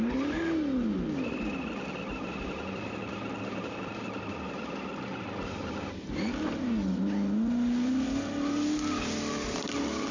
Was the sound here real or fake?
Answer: real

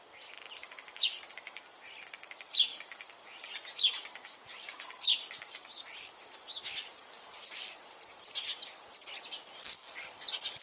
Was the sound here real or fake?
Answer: real